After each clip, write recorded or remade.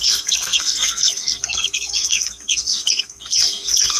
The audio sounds remade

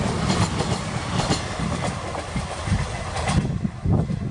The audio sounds recorded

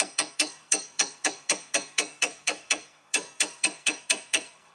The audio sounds remade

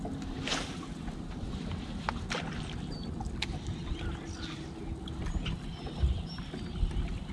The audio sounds recorded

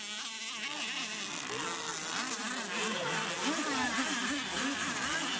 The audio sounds recorded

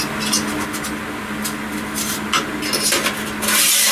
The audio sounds recorded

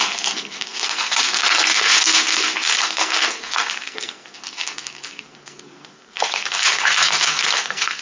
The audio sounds remade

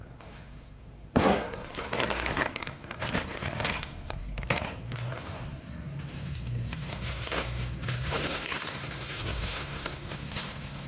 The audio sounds remade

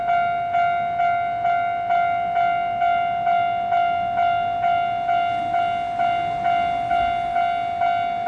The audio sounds recorded